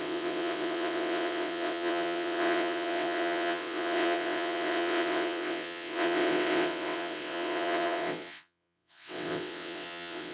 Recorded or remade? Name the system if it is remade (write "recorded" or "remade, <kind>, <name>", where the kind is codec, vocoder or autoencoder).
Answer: remade, vocoder, WaveNeXt